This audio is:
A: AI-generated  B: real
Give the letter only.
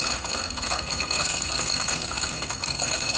A